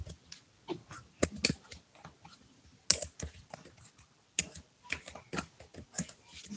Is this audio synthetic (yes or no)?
no